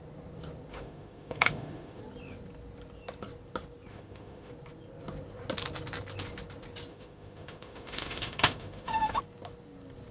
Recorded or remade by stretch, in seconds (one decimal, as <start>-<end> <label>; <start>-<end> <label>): 0.0-0.7 recorded; 0.7-2.0 remade; 2.0-3.9 recorded; 3.9-4.5 remade; 4.5-6.9 recorded; 6.9-9.2 remade; 9.2-10.1 recorded